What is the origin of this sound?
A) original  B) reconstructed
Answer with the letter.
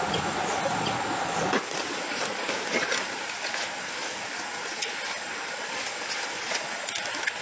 A